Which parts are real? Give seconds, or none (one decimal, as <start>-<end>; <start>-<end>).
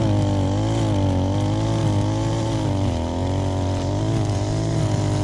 0.0-5.2